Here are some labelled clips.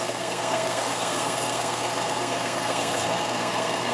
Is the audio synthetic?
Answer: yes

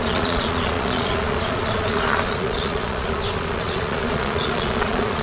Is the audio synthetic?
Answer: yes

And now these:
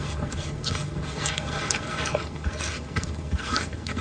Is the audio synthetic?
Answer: yes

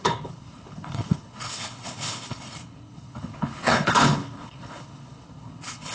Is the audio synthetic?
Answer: yes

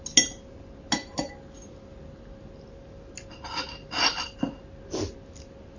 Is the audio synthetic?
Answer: no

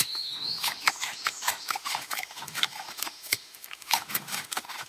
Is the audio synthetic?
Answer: yes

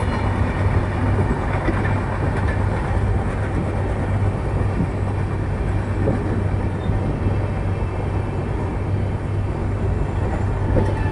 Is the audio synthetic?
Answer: no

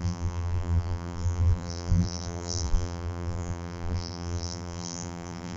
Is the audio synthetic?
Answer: yes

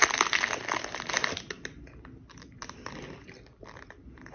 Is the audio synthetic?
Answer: no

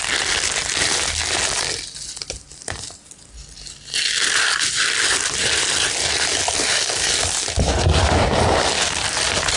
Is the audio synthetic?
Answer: no